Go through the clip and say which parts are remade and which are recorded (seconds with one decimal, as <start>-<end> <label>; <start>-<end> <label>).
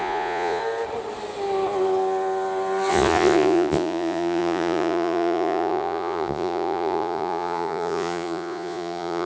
0.0-0.6 remade; 0.6-2.9 recorded; 2.9-9.3 remade